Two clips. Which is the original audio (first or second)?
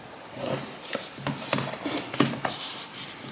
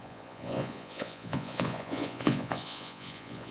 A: first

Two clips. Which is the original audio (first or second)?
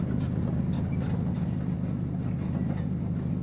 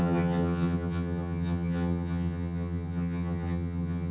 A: first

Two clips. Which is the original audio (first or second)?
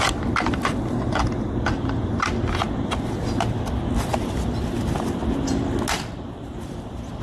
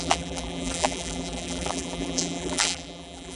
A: first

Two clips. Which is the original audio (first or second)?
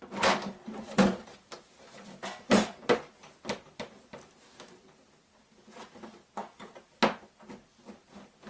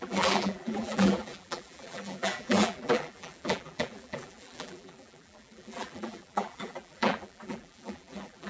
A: first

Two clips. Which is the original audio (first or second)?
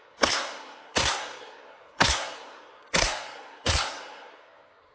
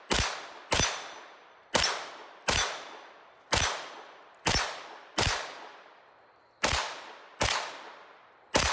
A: second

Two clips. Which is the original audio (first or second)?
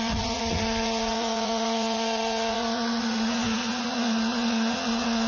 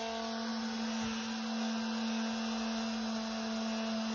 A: second